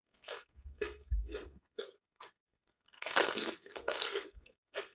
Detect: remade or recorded remade